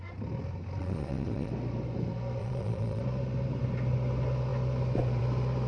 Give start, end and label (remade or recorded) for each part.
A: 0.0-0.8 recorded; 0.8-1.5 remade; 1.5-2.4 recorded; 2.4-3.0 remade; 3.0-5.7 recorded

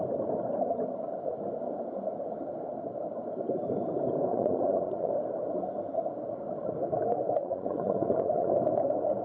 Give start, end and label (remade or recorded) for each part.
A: 0.0-4.3 recorded; 4.3-5.1 remade; 5.1-7.4 recorded; 7.4-8.5 remade; 8.5-9.2 recorded

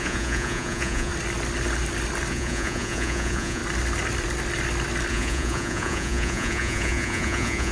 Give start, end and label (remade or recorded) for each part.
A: 0.0-1.1 remade; 1.1-2.3 recorded; 2.3-3.6 remade; 3.6-5.1 recorded; 5.1-7.7 remade